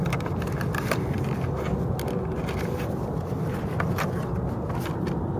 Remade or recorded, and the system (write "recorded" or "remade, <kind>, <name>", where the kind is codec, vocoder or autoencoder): recorded